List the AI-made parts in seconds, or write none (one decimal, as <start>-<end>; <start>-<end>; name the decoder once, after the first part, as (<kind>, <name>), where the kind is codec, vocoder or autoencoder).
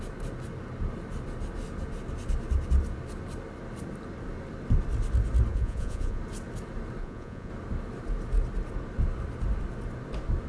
5.5-6.2 (vocoder, Vocos); 7.0-7.5